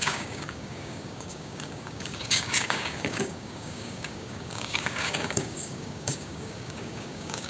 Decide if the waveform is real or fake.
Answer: fake